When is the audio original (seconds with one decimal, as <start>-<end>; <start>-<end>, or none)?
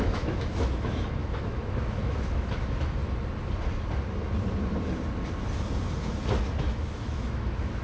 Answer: 3.0-6.6